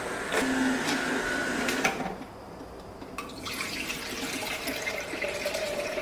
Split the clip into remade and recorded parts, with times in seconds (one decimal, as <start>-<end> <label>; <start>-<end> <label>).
0.0-1.4 recorded; 1.4-2.1 remade; 2.1-6.0 recorded